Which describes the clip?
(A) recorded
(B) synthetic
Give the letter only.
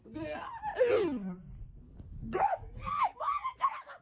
A